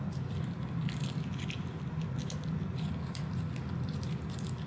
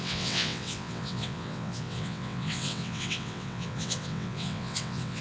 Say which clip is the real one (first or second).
first